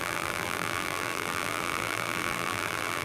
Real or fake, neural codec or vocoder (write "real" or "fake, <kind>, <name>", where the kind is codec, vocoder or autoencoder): fake, vocoder, BigVGAN v2